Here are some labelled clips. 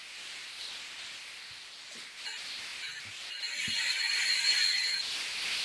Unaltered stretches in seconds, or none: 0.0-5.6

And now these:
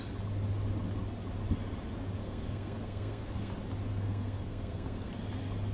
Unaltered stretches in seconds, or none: 0.0-2.2; 3.5-3.9; 5.1-5.7

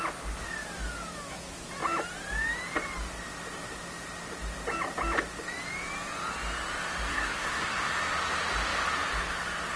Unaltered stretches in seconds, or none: 0.0-7.1; 7.9-9.8

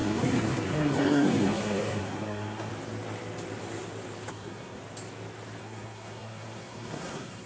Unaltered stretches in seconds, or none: 2.7-4.3; 4.8-5.6

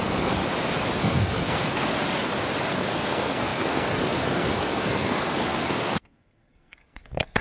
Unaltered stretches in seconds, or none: 0.4-1.0; 1.9-2.7